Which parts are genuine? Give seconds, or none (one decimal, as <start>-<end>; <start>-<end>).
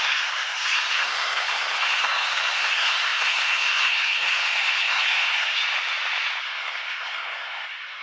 5.6-6.4